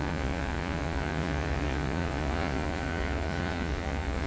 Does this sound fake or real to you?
fake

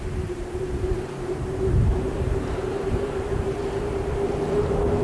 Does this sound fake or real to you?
fake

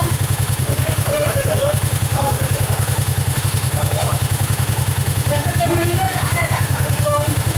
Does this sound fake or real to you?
fake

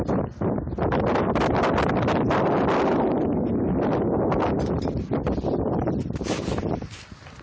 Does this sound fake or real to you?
fake